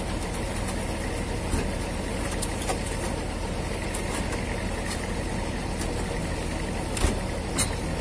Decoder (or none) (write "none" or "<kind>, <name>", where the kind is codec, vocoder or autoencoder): none